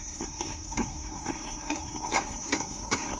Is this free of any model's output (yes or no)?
no